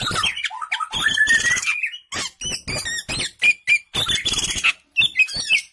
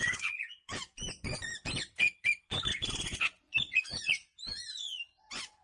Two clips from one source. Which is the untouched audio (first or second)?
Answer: first